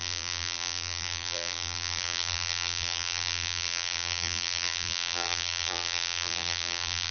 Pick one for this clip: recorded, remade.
remade